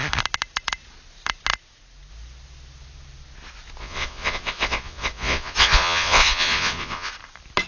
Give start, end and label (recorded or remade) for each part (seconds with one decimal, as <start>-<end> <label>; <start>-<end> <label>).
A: 0.0-3.8 recorded; 3.8-7.1 remade; 7.1-7.7 recorded